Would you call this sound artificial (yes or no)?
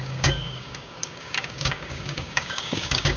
yes